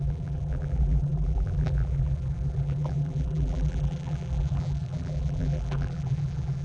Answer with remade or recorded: remade